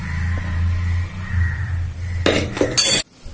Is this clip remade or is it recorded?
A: recorded